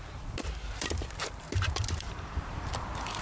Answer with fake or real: fake